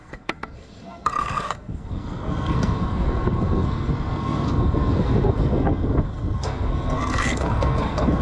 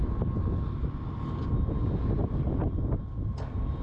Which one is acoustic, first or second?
second